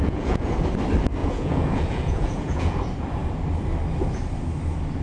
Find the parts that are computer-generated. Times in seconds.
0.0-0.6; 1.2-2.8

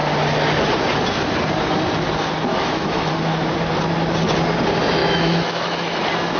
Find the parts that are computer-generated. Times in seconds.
2.5-3.1; 5.0-6.0

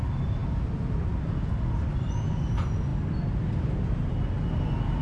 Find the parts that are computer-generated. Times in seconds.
none

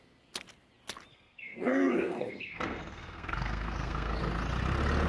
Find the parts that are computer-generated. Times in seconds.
1.1-4.2